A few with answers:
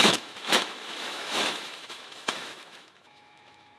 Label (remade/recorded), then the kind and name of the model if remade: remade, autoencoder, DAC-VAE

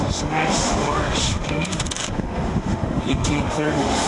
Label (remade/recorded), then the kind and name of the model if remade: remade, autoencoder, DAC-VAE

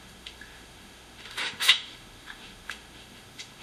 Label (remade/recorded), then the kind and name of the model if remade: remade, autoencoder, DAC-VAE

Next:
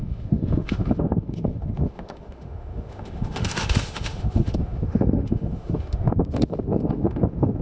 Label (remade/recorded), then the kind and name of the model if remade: remade, autoencoder, DAC-VAE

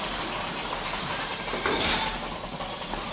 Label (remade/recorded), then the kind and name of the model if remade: recorded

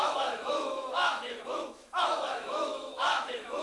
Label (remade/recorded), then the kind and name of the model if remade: remade, autoencoder, DAC-VAE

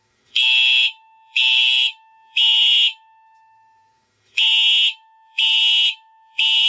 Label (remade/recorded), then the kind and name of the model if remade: remade, autoencoder, DAC-VAE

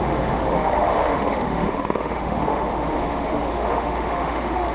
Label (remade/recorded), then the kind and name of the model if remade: remade, autoencoder, DAC-VAE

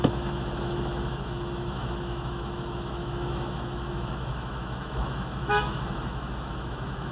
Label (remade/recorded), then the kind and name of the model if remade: remade, autoencoder, DAC-VAE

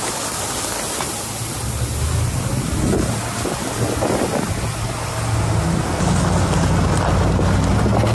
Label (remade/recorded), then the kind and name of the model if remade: recorded